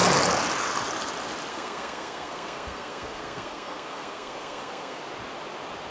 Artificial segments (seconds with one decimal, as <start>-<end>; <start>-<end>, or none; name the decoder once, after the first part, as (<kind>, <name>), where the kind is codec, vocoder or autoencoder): 1.5-5.0 (codec, SNAC)